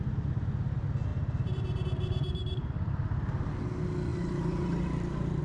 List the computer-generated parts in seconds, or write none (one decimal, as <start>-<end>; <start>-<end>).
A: 1.1-3.5; 4.1-5.4